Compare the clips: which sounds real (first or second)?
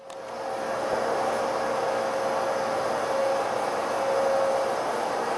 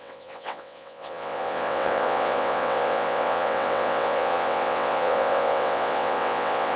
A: first